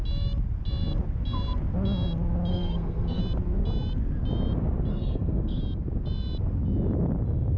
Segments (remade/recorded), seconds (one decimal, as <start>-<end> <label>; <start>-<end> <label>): 0.0-2.5 recorded; 2.5-3.2 remade; 3.2-4.9 recorded; 4.9-5.6 remade; 5.6-7.6 recorded

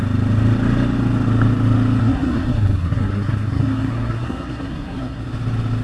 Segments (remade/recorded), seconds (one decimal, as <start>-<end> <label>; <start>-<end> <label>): 0.0-2.0 recorded; 2.0-5.2 remade; 5.2-5.8 recorded